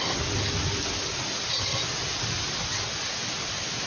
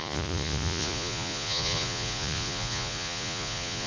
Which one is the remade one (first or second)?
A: second